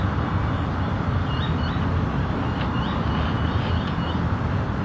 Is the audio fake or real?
real